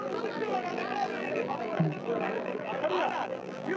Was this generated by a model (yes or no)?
yes